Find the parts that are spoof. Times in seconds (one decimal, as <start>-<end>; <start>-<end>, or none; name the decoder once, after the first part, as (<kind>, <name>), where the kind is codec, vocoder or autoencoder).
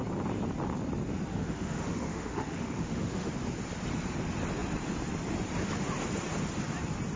1.3-3.3 (autoencoder, DAC-VAE)